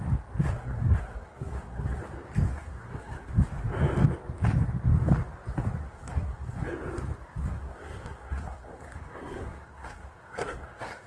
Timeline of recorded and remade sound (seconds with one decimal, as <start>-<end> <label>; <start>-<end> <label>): 0.0-0.4 recorded; 0.4-2.0 remade; 2.0-2.5 recorded; 2.5-3.3 remade; 3.3-5.8 recorded; 5.8-6.6 remade; 6.6-7.5 recorded; 7.5-11.1 remade